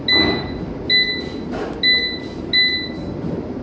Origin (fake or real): real